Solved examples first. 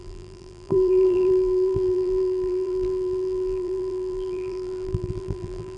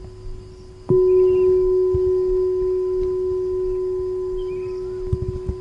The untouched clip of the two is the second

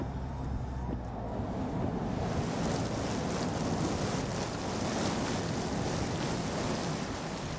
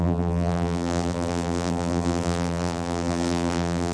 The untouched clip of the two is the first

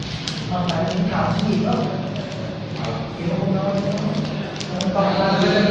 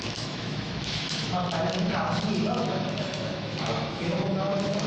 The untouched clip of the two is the first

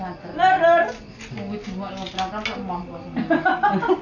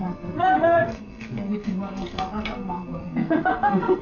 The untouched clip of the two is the first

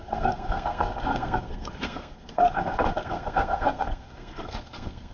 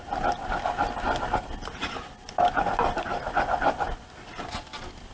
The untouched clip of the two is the second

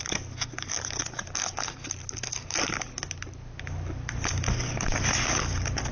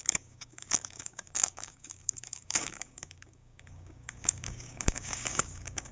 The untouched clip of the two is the first